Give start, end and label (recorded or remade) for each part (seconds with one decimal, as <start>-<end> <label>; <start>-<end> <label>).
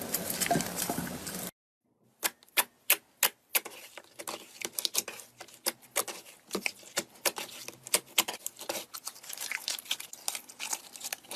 0.0-11.4 recorded